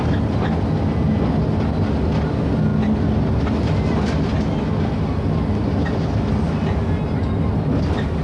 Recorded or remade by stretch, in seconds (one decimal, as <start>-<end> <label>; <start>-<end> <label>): 0.0-8.2 recorded